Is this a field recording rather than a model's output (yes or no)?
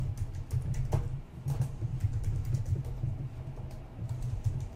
yes